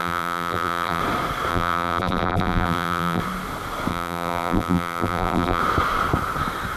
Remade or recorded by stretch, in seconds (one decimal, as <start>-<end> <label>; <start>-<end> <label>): 0.0-1.0 remade; 1.0-1.5 recorded; 1.5-3.2 remade; 3.2-3.9 recorded; 3.9-5.6 remade; 5.6-6.8 recorded